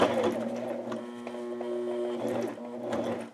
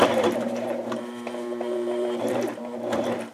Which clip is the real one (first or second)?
first